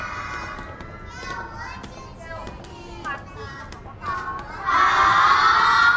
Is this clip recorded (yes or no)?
yes